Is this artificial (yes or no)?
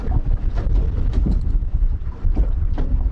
no